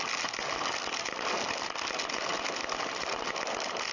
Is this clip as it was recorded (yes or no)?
yes